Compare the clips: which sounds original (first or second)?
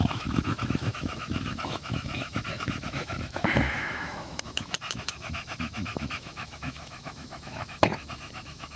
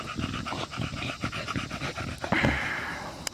second